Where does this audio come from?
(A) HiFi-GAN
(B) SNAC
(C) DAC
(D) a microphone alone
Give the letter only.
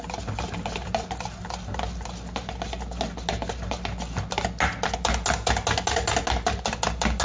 D